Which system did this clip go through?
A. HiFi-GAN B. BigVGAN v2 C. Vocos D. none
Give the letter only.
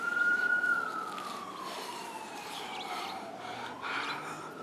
D